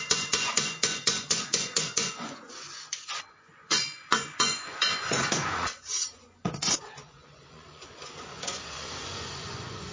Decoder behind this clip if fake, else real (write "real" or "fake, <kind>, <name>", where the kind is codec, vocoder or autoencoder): fake, vocoder, Vocos